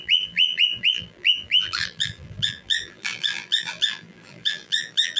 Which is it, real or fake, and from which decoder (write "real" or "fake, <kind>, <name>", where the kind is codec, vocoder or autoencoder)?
fake, vocoder, BigVGAN v2